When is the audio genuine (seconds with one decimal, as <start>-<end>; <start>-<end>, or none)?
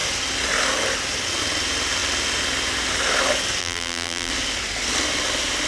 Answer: 0.0-3.6; 4.3-5.7